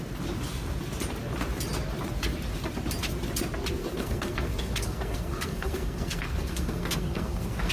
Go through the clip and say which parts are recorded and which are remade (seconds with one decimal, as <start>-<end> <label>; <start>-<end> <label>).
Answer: 0.0-3.8 recorded; 3.8-7.7 remade